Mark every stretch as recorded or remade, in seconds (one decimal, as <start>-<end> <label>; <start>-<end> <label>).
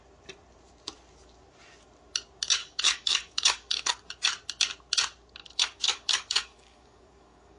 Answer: 0.0-2.6 recorded; 2.6-4.1 remade; 4.1-5.4 recorded; 5.4-7.6 remade